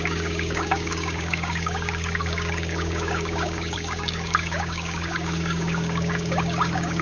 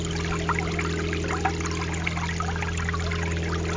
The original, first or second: second